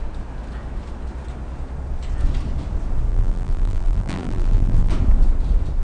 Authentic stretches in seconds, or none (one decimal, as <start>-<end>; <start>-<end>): 0.0-3.1; 4.9-5.8